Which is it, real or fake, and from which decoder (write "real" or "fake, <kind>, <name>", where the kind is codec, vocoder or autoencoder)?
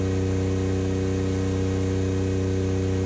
real